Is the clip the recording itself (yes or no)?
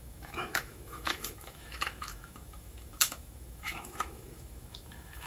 no